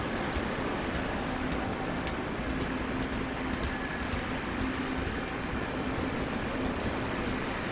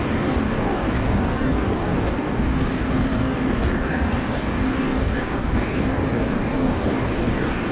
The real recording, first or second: first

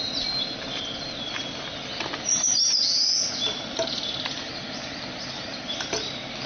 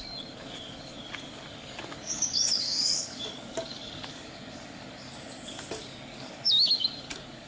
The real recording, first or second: first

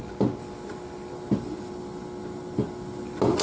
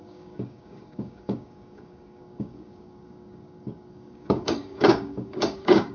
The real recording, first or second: first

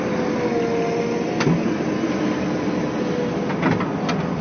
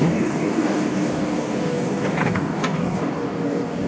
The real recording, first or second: first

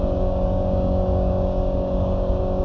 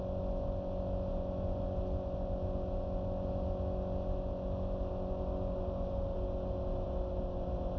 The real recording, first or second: second